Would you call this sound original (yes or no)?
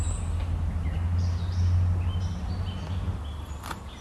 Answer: yes